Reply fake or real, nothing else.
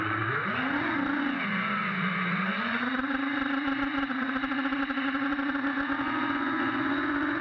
fake